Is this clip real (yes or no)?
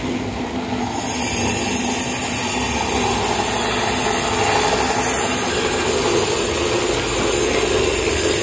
yes